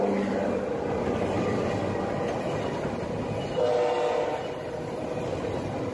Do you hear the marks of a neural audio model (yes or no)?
no